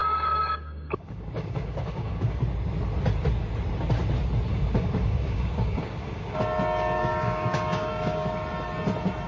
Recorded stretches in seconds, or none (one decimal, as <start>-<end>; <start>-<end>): 2.4-4.5; 6.4-7.0; 8.3-9.3